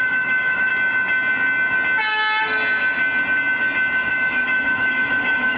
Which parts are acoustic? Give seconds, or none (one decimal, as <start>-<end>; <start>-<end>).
0.7-4.1